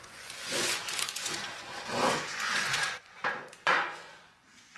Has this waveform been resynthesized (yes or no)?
yes